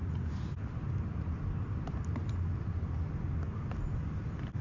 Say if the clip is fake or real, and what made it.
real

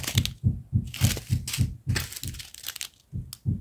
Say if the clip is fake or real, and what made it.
real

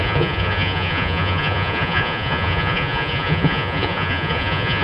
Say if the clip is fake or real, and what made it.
fake, vocoder, Vocos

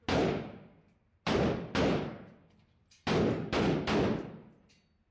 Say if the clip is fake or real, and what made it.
real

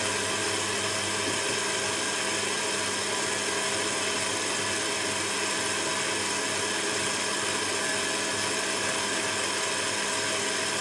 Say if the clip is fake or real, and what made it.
real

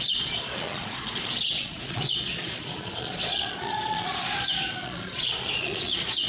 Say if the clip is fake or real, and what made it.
fake, vocoder, Vocos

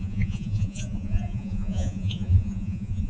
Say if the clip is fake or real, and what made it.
fake, vocoder, Vocos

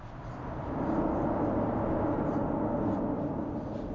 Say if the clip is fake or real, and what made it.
real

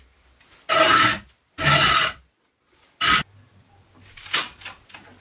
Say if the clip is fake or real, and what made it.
real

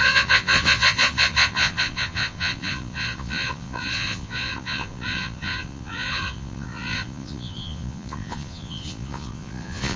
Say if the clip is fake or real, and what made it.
fake, vocoder, Vocos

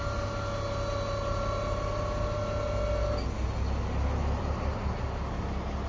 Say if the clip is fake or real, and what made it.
real